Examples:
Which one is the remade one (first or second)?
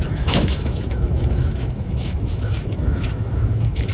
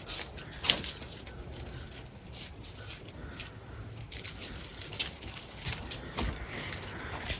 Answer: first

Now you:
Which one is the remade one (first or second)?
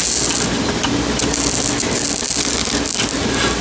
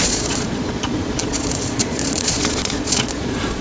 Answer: second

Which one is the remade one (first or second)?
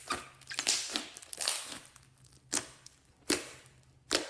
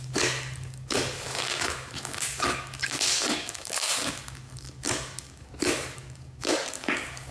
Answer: second